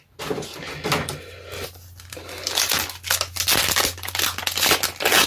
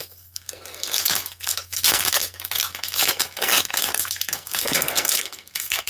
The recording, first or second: first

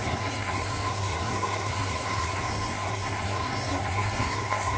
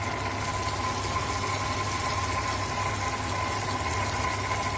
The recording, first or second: second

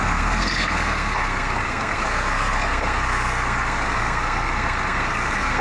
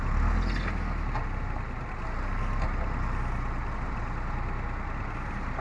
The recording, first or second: second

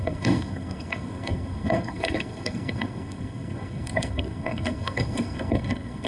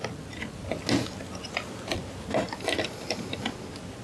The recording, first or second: second